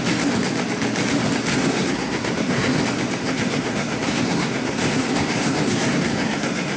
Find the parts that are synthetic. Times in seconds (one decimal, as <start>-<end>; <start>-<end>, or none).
1.5-2.8; 3.2-6.8